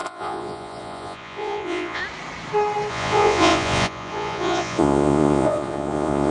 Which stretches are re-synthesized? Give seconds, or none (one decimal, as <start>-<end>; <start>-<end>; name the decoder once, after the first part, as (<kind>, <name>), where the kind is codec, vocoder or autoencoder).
0.0-2.0 (vocoder, Vocos); 2.9-6.3

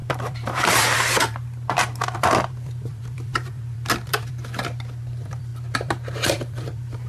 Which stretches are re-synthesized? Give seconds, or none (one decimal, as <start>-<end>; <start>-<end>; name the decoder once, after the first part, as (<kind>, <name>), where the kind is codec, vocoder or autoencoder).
0.0-7.1 (vocoder, BigVGAN v2)

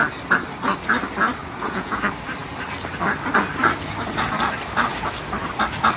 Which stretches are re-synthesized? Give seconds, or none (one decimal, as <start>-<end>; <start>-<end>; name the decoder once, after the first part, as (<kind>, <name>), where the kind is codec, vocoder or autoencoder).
1.4-2.0 (vocoder, Vocos)